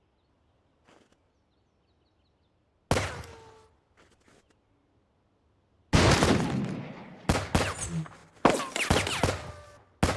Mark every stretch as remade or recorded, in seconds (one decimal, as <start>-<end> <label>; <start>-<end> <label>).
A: 0.0-10.2 recorded